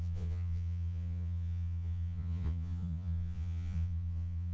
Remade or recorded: remade